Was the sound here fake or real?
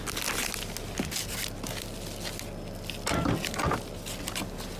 real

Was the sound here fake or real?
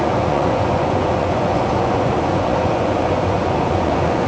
fake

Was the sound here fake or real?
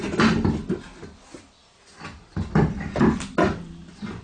real